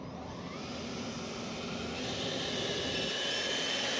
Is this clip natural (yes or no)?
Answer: yes